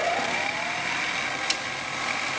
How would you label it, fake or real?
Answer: real